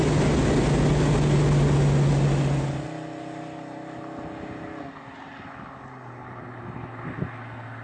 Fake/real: real